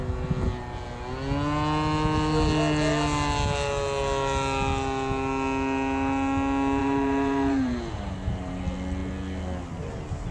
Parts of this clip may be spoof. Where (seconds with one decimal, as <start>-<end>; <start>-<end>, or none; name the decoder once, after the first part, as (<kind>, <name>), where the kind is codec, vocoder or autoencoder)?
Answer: 6.8-8.6 (vocoder, BigVGAN v2)